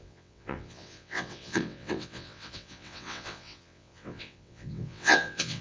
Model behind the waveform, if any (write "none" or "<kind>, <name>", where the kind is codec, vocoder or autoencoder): vocoder, WaveNeXt